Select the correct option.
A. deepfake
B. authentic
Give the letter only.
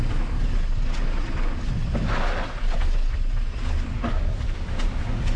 B